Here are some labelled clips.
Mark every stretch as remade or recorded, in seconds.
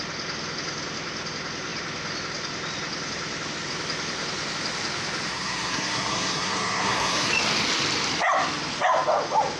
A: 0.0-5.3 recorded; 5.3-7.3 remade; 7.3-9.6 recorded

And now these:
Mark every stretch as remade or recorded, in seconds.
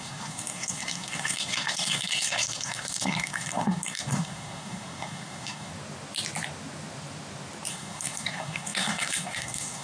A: 0.0-5.7 remade; 5.7-7.7 recorded; 7.7-9.8 remade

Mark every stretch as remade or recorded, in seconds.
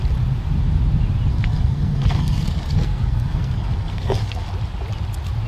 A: 0.0-1.3 recorded; 1.3-4.5 remade; 4.5-5.5 recorded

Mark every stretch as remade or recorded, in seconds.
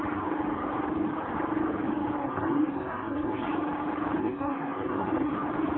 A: 0.0-2.2 recorded; 2.2-3.5 remade; 3.5-4.2 recorded; 4.2-5.3 remade; 5.3-5.8 recorded